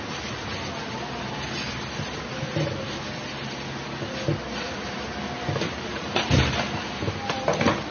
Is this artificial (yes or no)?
no